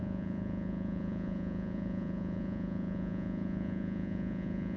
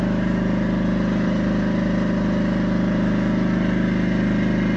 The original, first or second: second